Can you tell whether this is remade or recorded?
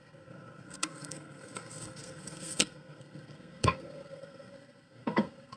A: remade